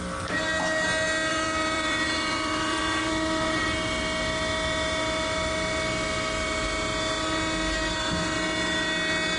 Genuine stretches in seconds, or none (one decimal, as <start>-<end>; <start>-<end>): 0.0-1.3; 2.8-9.4

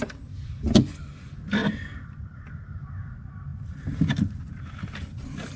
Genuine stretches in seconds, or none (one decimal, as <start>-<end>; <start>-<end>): 0.0-1.6; 2.5-5.6

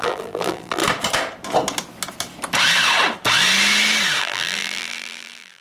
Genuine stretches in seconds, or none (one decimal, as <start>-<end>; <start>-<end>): 0.8-4.2

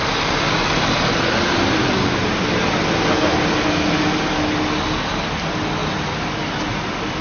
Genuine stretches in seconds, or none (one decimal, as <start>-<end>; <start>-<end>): 0.0-5.8; 6.5-7.2